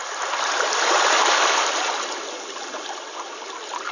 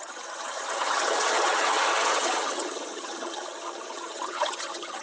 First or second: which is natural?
first